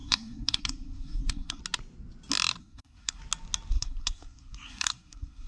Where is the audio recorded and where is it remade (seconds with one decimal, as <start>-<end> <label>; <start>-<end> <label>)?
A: 0.0-1.6 remade; 1.6-2.6 recorded; 2.6-3.2 remade; 3.2-3.7 recorded; 3.7-5.5 remade